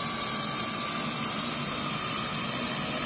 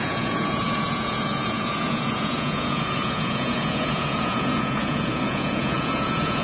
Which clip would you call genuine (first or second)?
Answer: first